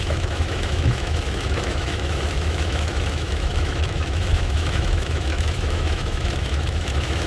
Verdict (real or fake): fake